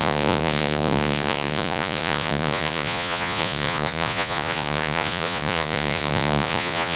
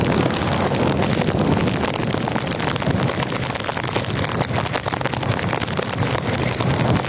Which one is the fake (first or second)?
first